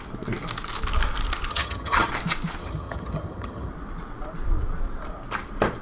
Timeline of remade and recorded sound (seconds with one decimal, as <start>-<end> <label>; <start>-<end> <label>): 0.0-1.5 recorded; 1.5-2.1 remade; 2.1-2.6 recorded; 2.6-3.7 remade; 3.7-5.8 recorded

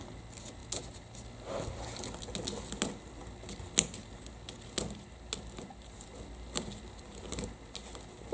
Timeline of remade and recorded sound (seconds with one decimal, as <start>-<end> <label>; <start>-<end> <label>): 0.0-8.3 recorded

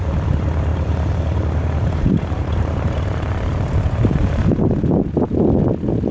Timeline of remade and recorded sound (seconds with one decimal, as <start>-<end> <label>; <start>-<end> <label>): 0.0-0.7 recorded; 0.7-4.4 remade; 4.4-6.1 recorded

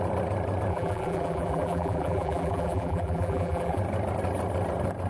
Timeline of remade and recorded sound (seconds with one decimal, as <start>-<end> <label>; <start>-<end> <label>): 0.0-0.7 recorded; 0.7-3.8 remade; 3.8-5.1 recorded

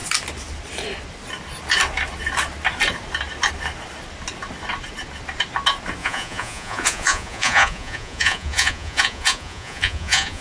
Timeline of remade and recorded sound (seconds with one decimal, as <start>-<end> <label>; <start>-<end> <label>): 0.0-6.0 recorded; 6.0-10.4 remade

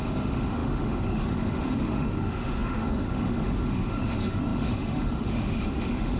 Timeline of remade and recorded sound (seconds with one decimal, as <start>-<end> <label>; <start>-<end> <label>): 0.0-6.2 remade